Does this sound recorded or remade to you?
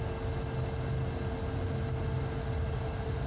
recorded